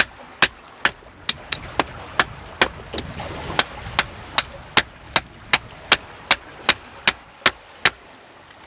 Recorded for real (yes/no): yes